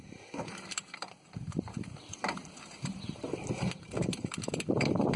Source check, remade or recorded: remade